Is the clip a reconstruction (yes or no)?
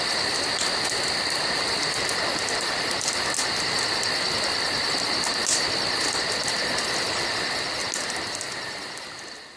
no